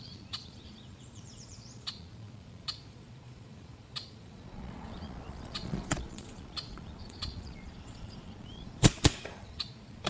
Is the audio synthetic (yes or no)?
yes